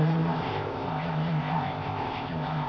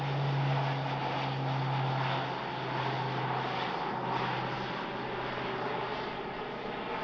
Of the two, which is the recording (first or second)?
second